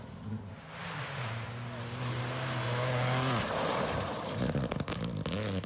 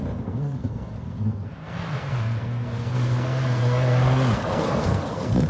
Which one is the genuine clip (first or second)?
first